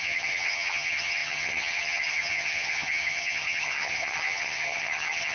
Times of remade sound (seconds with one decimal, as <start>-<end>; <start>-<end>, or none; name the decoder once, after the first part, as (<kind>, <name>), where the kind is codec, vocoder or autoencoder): 0.0-5.3 (vocoder, HiFi-GAN)